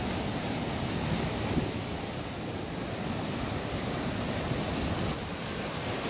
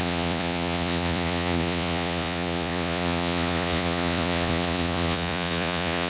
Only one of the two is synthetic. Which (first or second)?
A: second